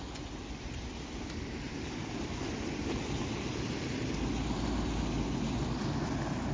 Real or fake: real